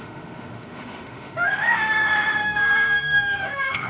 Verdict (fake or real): fake